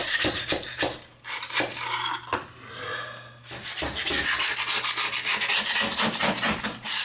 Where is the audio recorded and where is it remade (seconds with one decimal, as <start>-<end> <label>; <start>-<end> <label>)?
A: 0.0-7.0 recorded